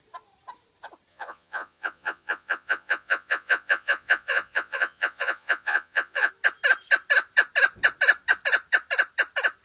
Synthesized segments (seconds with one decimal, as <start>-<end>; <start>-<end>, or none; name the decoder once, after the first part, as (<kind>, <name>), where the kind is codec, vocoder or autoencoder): 1.1-6.3 (vocoder, Vocos)

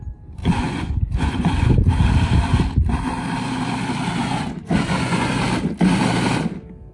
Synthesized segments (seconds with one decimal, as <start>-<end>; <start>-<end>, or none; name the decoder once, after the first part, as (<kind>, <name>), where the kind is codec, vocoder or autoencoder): 0.4-2.0 (vocoder, Vocos); 4.2-5.3

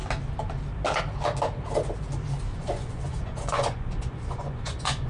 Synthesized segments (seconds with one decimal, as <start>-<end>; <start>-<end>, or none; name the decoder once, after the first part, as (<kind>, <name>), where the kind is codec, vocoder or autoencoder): 2.5-5.1 (vocoder, Vocos)

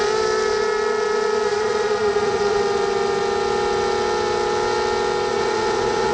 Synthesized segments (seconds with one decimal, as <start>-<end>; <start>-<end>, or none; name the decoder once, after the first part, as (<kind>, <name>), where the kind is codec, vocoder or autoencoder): 1.5-2.6 (vocoder, Vocos); 5.3-6.1

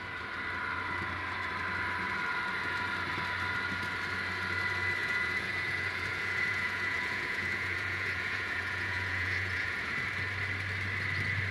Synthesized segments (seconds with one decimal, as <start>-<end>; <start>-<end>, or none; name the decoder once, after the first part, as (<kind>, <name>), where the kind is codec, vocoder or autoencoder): 5.0-9.9 (vocoder, Vocos)

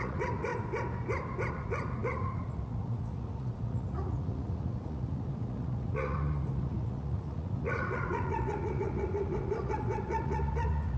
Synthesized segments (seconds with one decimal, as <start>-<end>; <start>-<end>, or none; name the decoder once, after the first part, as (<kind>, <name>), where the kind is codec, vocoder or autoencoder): 0.0-0.5 (vocoder, Vocos); 1.5-11.0

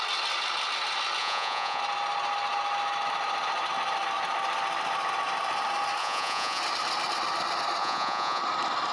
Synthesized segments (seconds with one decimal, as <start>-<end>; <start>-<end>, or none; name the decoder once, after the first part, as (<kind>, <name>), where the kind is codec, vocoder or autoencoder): 1.2-1.8 (vocoder, Vocos); 6.0-6.6; 7.8-8.4